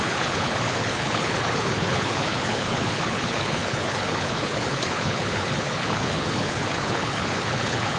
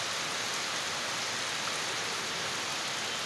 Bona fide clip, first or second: second